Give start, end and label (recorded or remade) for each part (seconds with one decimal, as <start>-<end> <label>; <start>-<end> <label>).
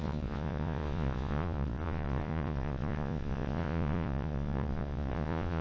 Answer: 0.0-5.6 remade